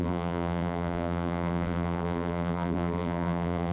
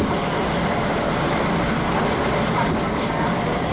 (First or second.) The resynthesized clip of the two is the first